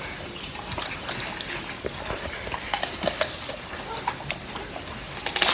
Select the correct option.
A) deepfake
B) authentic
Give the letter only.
B